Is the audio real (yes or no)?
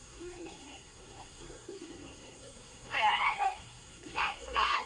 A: no